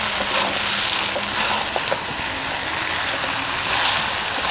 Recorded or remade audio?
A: recorded